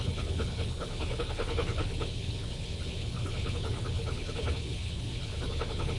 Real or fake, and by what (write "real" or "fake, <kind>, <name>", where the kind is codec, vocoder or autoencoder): fake, codec, HILCodec